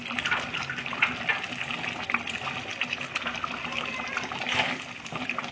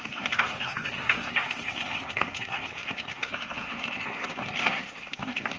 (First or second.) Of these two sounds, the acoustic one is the first